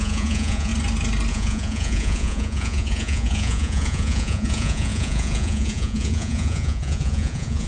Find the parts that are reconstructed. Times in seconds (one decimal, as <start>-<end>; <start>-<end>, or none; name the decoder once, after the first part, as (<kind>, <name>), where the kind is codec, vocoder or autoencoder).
0.0-0.7 (vocoder, Vocos); 1.3-7.7